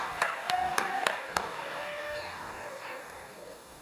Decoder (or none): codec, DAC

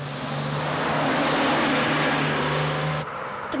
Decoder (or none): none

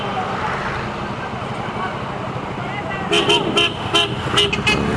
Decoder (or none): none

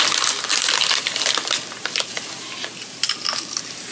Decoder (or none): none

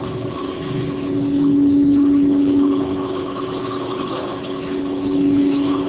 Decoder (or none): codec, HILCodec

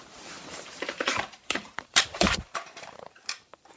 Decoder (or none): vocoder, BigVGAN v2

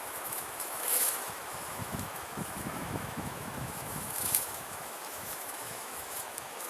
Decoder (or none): autoencoder, DAC-VAE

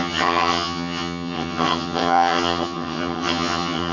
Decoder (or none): vocoder, HiFi-GAN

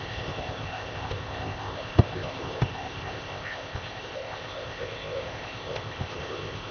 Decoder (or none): codec, ZipCodec